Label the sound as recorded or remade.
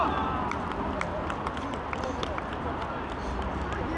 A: recorded